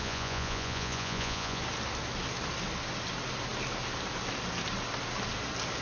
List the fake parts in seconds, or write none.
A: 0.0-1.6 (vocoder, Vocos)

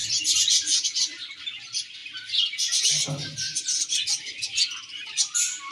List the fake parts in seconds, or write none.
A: none

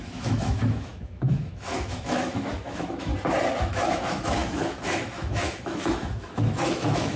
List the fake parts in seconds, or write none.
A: 0.0-3.1 (autoencoder, DAC-VAE); 3.6-7.2

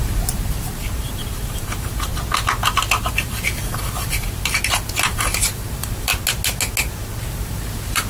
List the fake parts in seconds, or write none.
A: 0.0-2.1 (vocoder, BigVGAN v2); 3.1-6.1; 7.2-8.1

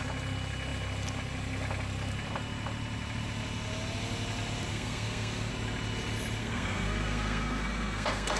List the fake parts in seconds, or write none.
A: 4.7-5.5 (codec, SNAC); 6.4-8.4

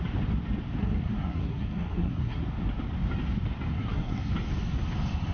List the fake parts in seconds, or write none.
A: 0.8-2.4 (codec, SNAC); 3.7-4.3